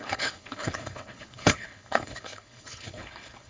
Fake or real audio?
fake